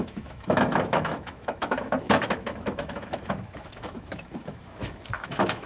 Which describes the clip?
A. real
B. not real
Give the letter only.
B